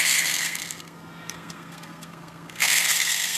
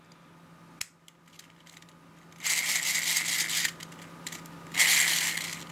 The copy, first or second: first